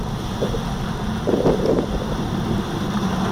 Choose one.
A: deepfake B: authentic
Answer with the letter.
B